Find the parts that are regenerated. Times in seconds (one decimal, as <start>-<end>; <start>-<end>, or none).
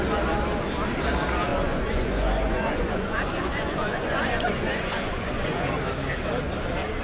1.5-5.7